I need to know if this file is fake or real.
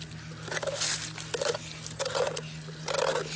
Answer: real